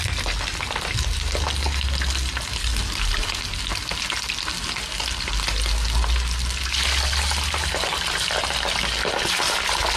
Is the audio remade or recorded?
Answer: recorded